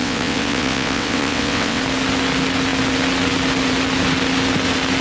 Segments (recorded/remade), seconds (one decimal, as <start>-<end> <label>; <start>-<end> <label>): 0.0-1.8 remade; 1.8-5.0 recorded